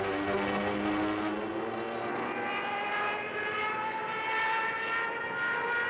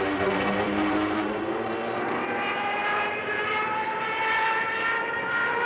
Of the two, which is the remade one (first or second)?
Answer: second